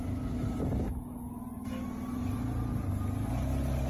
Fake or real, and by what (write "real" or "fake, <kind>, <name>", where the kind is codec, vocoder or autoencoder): real